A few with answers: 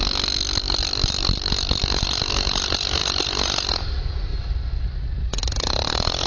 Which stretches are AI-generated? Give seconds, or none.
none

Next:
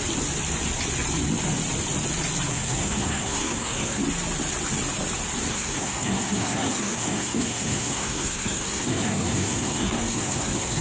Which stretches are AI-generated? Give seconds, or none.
2.5-4.0 (codec, SNAC); 5.5-10.8

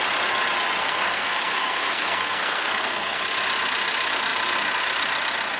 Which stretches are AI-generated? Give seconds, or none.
0.8-3.2 (codec, SNAC)

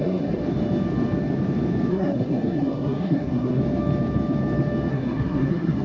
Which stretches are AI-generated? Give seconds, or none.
0.0-0.4 (codec, SNAC); 1.9-3.6; 4.9-5.8

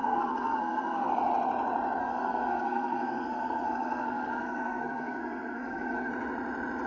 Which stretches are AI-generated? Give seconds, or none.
0.0-1.1 (codec, SNAC); 2.0-6.1

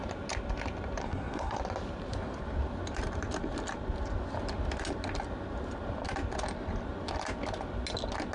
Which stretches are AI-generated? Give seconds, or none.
1.0-1.6 (codec, SNAC)

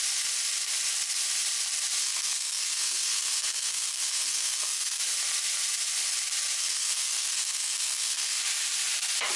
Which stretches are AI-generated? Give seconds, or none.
2.0-5.0 (codec, SNAC); 6.6-8.4